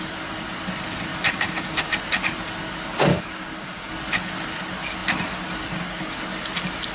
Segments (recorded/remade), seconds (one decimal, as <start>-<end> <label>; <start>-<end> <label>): 0.0-1.3 recorded; 1.3-1.9 remade; 1.9-3.1 recorded; 3.1-3.9 remade; 3.9-6.9 recorded